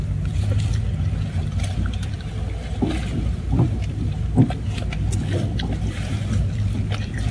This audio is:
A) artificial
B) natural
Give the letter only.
B